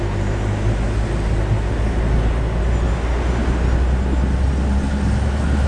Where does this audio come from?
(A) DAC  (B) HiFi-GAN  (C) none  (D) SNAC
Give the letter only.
C